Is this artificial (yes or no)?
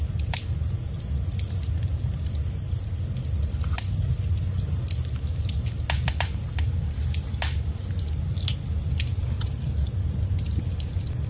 no